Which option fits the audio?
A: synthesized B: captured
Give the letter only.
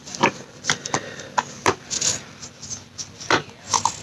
B